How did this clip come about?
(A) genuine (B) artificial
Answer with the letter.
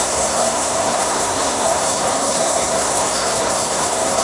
B